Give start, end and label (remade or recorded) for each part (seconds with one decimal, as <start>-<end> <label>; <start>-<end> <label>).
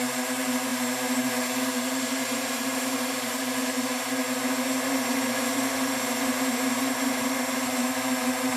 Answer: 0.0-8.6 remade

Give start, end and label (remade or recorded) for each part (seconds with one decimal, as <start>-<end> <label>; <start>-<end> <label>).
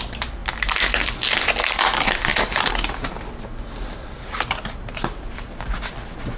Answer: 0.0-0.4 recorded; 0.4-1.3 remade; 1.3-6.4 recorded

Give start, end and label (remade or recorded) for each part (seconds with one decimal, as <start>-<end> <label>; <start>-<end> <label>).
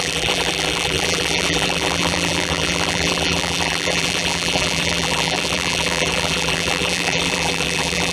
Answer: 0.0-8.1 remade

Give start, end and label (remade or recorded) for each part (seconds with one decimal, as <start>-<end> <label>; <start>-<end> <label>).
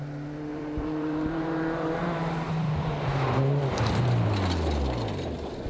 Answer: 0.0-0.5 recorded; 0.5-3.9 remade; 3.9-5.7 recorded